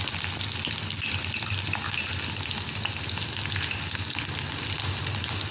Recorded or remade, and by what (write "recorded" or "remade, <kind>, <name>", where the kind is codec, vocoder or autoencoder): recorded